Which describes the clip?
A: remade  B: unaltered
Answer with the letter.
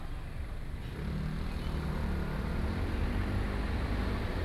B